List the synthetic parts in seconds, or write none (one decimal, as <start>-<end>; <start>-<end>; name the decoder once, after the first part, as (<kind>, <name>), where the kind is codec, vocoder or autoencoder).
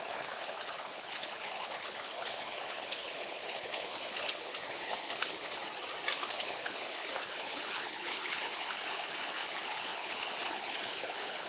0.0-5.6 (codec, HILCodec); 6.3-11.5